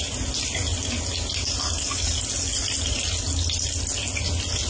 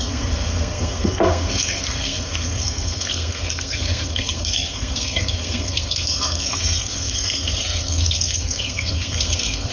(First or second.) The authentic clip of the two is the first